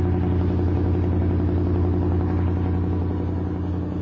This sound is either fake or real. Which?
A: real